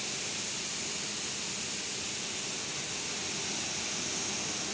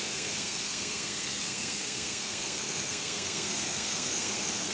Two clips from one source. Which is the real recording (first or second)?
first